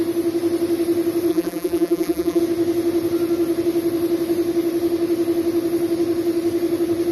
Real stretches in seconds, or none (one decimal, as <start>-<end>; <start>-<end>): 0.0-1.3; 2.4-7.1